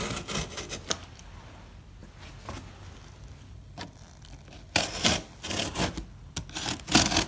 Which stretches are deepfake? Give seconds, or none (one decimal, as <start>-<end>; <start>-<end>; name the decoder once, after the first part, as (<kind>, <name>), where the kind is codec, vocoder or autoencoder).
none